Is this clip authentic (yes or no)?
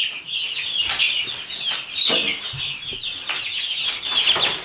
yes